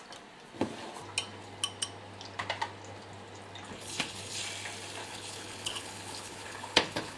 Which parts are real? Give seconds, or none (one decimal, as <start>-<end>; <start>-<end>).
0.0-3.7; 4.4-5.0